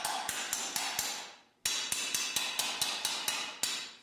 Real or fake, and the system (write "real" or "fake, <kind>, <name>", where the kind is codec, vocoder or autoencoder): real